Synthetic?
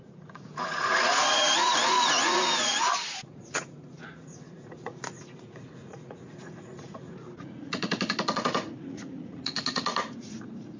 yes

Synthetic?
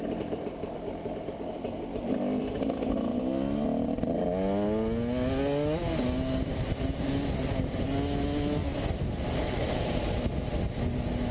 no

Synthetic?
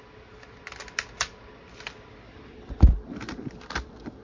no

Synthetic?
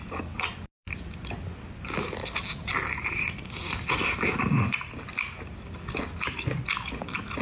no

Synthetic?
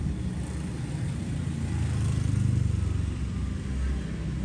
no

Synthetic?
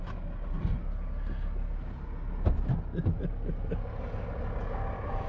no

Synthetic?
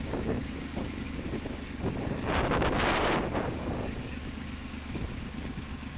yes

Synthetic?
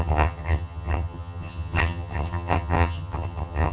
yes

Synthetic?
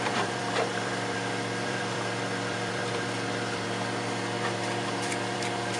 yes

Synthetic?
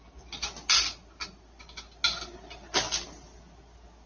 no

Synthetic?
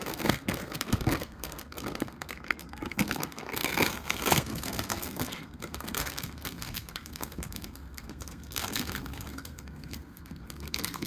yes